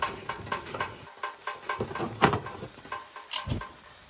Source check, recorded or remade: recorded